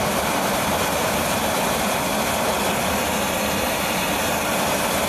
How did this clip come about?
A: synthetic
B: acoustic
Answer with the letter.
B